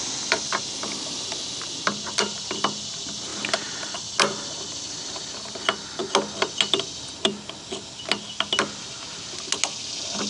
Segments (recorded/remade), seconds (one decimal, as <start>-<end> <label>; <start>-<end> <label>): 0.0-10.3 recorded